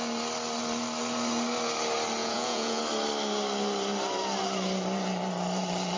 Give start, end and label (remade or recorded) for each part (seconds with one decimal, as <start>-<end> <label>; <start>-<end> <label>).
0.0-2.2 recorded; 2.2-2.8 remade; 2.8-6.0 recorded